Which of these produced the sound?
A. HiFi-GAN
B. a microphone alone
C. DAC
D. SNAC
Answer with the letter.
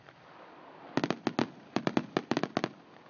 B